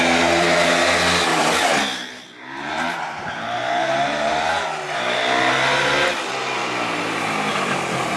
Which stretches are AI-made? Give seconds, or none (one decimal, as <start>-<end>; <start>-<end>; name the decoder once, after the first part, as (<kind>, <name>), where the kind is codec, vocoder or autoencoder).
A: 1.3-4.3 (vocoder, BigVGAN v2); 6.6-7.2